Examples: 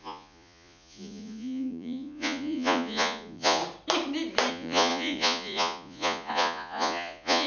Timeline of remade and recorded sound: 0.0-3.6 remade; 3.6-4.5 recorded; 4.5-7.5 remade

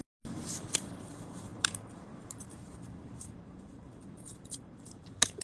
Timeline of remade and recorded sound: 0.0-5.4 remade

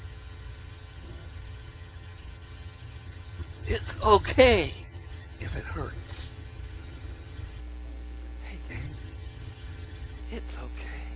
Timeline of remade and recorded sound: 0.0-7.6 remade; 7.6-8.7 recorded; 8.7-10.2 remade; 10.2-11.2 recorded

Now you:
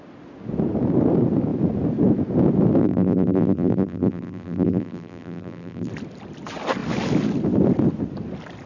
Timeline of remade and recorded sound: 0.0-2.8 recorded; 2.8-5.9 remade; 5.9-8.7 recorded

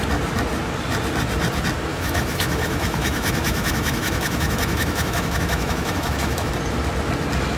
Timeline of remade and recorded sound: 0.0-1.9 recorded; 1.9-6.5 remade; 6.5-7.6 recorded

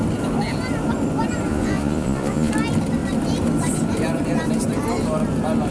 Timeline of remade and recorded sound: 0.0-1.5 recorded; 1.5-2.5 remade; 2.5-5.7 recorded

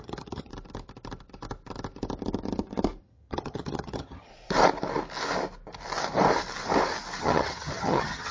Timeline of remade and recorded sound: 0.0-0.5 remade; 0.5-3.0 recorded; 3.0-4.3 remade; 4.3-7.2 recorded; 7.2-8.3 remade

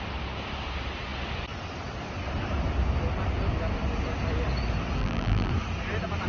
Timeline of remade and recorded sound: 0.0-5.0 recorded; 5.0-5.5 remade; 5.5-6.3 recorded